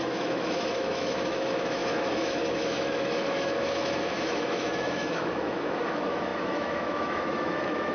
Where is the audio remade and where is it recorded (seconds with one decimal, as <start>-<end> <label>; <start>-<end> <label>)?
0.0-7.9 remade